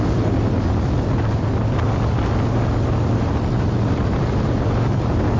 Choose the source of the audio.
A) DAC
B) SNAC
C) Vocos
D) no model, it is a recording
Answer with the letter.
D